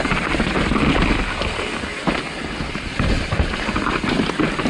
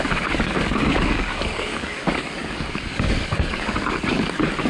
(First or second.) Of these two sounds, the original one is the first